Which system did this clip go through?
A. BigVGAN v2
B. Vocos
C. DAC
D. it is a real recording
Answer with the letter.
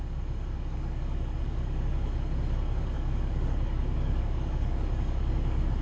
C